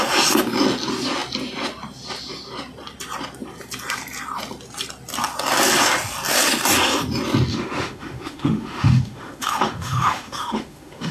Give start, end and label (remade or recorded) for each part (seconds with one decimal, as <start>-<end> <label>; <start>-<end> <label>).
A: 0.0-7.5 recorded; 7.5-11.1 remade